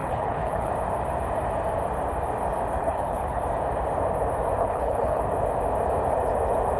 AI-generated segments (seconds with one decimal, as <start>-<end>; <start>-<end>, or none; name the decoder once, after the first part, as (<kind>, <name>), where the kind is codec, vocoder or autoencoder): 0.0-0.7 (codec, HILCodec); 2.8-3.4; 4.6-5.2